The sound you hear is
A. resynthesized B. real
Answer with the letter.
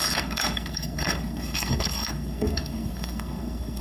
A